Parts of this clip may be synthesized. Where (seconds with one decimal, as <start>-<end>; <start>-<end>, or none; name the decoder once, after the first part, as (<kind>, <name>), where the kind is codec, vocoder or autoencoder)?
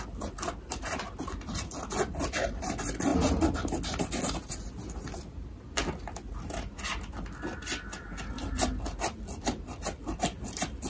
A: none